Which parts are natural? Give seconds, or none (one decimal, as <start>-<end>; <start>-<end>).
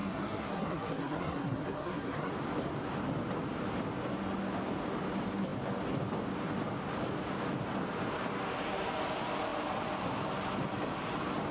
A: 2.3-11.5